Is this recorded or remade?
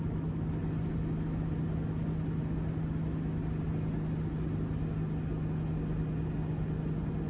recorded